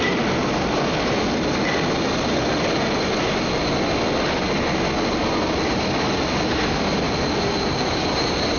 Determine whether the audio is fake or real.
real